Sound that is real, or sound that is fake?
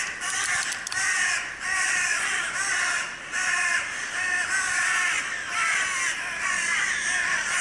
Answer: fake